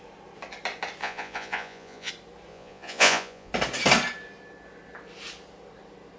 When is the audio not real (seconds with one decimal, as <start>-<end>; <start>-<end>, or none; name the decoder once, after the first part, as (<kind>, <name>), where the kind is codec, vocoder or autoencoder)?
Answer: 1.0-2.1 (vocoder, Vocos); 2.5-3.5